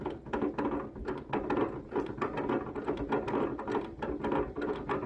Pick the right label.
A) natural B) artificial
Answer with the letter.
A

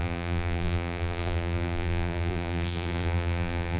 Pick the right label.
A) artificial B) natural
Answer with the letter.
A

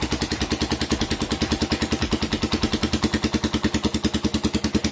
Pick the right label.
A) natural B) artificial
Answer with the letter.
A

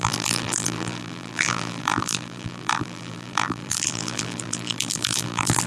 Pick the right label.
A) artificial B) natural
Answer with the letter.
A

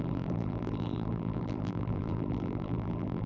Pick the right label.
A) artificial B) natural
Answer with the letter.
A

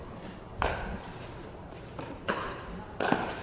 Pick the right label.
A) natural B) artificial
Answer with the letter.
B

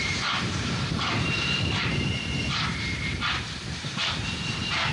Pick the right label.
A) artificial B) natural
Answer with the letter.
A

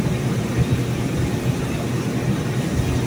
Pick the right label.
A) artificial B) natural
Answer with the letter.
B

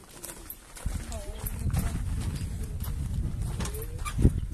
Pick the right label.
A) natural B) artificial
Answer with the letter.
A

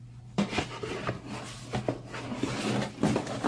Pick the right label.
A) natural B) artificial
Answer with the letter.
A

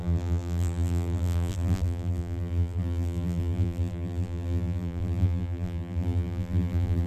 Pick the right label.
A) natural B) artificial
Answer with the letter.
B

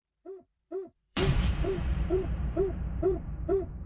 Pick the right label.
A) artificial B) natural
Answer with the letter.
A